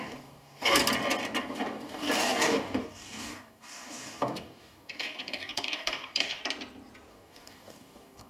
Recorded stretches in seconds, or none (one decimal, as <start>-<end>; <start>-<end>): 0.8-1.4; 6.4-7.1